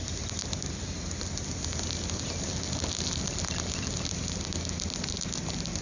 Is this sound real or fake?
real